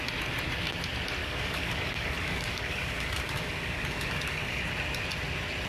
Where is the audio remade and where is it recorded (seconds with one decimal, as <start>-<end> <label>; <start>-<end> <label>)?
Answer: 0.0-1.2 recorded; 1.2-4.6 remade; 4.6-5.7 recorded